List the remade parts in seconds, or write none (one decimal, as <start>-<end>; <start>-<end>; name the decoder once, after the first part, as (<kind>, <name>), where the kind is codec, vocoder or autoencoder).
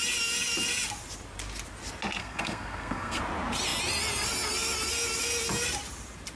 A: 2.2-3.2 (codec, SNAC)